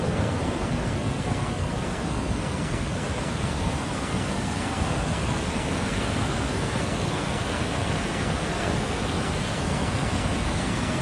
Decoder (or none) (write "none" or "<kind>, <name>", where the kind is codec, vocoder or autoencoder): codec, SNAC